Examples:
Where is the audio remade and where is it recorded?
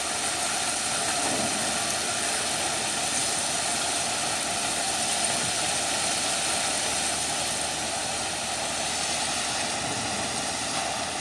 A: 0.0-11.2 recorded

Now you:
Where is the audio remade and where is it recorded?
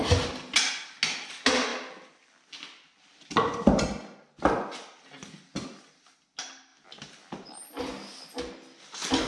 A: 0.0-9.3 recorded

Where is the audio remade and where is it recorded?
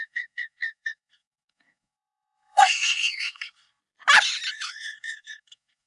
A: 0.0-3.8 remade; 3.8-4.5 recorded; 4.5-5.9 remade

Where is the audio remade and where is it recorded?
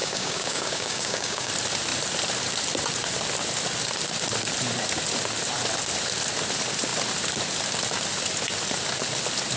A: 0.0-1.5 remade; 1.5-9.6 recorded